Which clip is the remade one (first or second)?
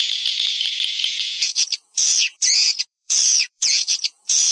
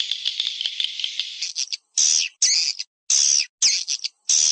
first